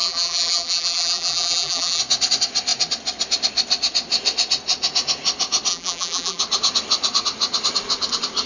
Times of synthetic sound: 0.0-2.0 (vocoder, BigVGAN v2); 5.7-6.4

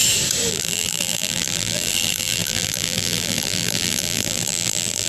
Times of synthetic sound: 0.5-5.1 (vocoder, BigVGAN v2)

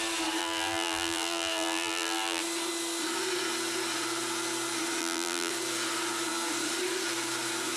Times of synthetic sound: 0.4-2.4 (vocoder, BigVGAN v2); 5.0-5.5

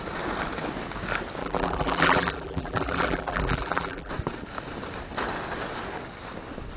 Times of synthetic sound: 1.4-4.1 (vocoder, BigVGAN v2)

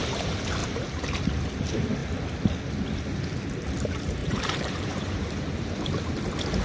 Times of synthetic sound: 0.6-1.2 (vocoder, BigVGAN v2); 4.2-6.1